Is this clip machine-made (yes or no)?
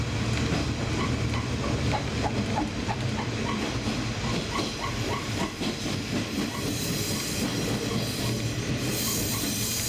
no